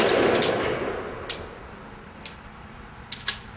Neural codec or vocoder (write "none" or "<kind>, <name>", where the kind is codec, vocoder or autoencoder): none